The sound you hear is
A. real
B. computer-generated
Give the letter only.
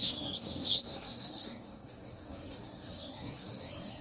B